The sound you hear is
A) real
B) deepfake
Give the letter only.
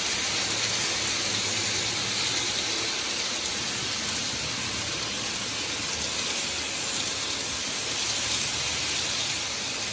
A